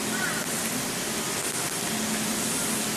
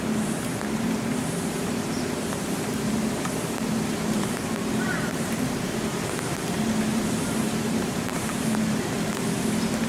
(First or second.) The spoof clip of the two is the second